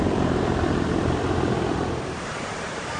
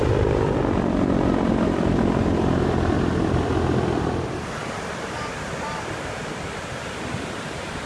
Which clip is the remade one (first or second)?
first